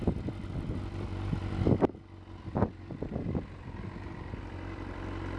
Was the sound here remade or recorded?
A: recorded